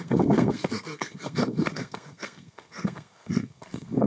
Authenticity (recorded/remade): remade